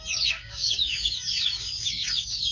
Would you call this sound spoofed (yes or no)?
yes